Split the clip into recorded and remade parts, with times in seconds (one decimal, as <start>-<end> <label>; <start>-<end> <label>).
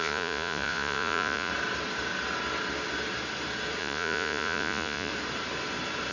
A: 0.0-1.5 remade; 1.5-3.8 recorded; 3.8-5.1 remade; 5.1-6.1 recorded